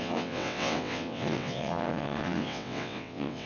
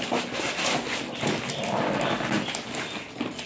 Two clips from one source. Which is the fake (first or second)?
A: first